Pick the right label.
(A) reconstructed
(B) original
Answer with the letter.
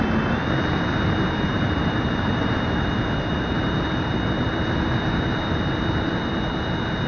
A